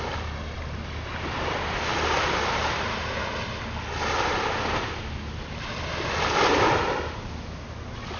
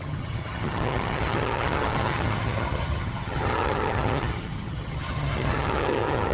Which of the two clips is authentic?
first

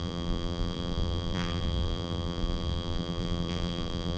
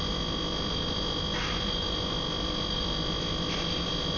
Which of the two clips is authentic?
second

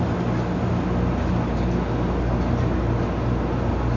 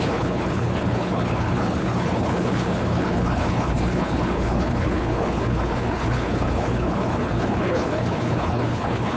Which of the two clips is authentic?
first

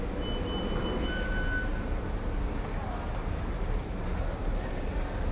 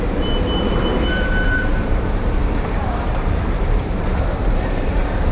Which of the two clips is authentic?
first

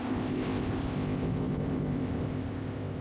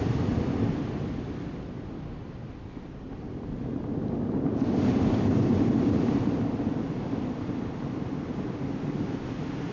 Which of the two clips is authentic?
second